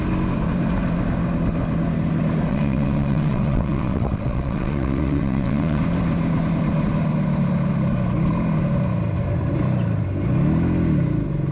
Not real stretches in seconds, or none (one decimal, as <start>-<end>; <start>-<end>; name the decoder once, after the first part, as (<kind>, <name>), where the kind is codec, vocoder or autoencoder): 2.5-5.8 (vocoder, WaveNeXt)